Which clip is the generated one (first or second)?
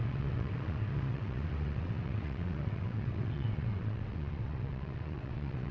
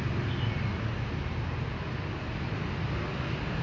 first